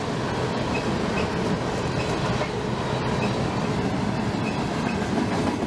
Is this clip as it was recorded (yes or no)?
yes